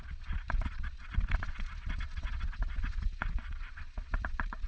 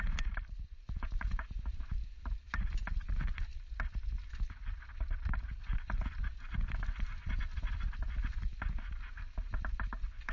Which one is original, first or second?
second